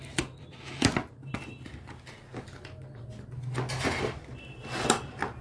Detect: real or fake real